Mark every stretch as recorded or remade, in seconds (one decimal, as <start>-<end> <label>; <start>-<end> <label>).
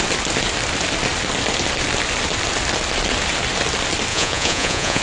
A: 0.0-4.1 recorded; 4.1-5.0 remade